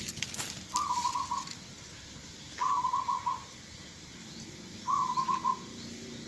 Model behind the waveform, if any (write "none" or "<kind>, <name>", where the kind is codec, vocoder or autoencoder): none